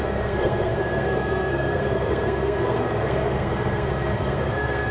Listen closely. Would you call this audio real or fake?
fake